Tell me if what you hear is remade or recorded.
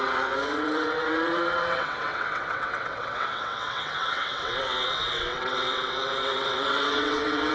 remade